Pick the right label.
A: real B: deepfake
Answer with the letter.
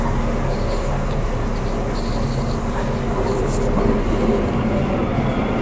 A